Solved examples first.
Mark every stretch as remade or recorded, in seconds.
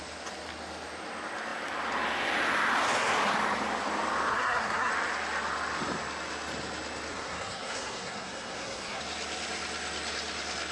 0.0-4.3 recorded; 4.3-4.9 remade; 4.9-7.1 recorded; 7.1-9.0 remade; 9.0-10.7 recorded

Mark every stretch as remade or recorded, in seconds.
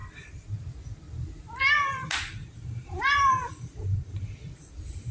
0.0-2.4 recorded; 2.4-4.5 remade; 4.5-5.1 recorded